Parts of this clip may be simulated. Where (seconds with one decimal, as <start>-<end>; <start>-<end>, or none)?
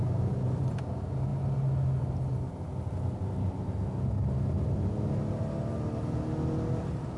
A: none